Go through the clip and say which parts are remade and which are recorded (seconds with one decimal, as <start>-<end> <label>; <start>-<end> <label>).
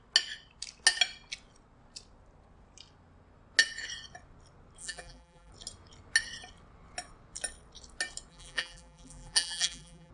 0.0-4.8 recorded; 4.8-5.5 remade; 5.5-8.3 recorded; 8.3-10.1 remade